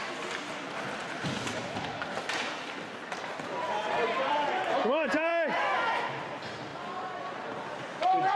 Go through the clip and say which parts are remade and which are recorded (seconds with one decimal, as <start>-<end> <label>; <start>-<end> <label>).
0.0-1.0 remade; 1.0-2.1 recorded; 2.1-5.3 remade; 5.3-6.2 recorded; 6.2-6.7 remade; 6.7-7.3 recorded; 7.3-8.4 remade